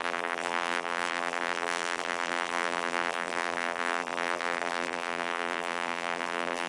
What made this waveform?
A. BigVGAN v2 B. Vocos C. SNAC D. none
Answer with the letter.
A